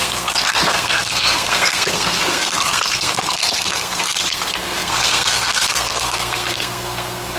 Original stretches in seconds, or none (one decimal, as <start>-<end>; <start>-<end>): none